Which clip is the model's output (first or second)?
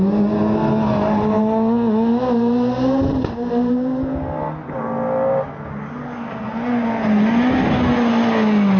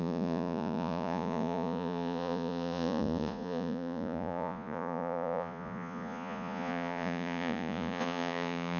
second